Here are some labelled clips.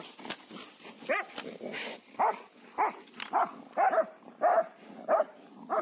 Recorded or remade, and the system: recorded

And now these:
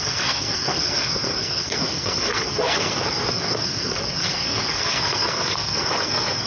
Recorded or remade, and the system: remade, codec, SNAC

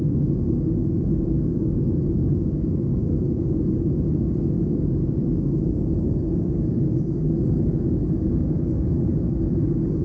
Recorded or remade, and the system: remade, codec, DAC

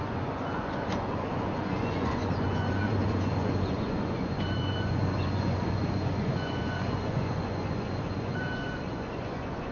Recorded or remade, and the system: remade, vocoder, Vocos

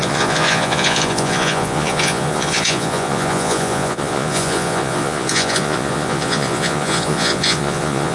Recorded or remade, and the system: remade, vocoder, Vocos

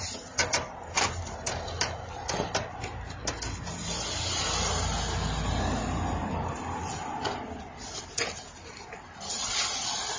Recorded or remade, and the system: recorded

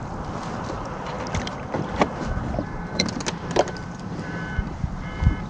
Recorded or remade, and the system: remade, vocoder, BigVGAN v2